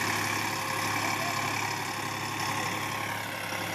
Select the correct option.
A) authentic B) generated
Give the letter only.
A